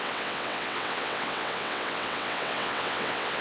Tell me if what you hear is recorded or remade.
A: remade